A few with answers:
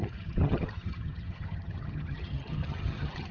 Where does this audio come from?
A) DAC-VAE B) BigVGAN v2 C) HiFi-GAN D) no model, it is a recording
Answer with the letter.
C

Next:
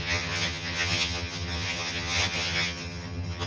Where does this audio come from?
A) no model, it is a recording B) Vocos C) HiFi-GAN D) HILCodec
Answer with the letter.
C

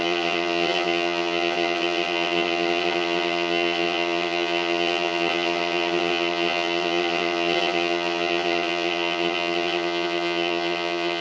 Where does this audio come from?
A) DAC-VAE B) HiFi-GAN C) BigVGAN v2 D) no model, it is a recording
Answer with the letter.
B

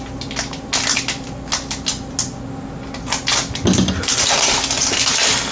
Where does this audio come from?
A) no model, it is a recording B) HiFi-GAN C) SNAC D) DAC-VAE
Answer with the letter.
A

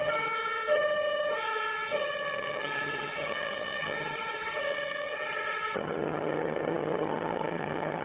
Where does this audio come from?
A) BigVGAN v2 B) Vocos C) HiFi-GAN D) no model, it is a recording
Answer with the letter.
C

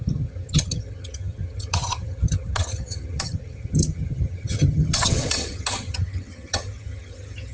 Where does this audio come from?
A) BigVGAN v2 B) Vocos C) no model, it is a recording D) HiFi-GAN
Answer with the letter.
D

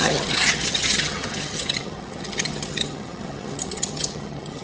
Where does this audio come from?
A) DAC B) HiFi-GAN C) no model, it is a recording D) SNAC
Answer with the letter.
B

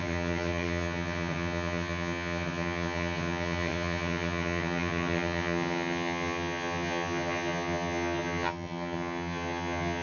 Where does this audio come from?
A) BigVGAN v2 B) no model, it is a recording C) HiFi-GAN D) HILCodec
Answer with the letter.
C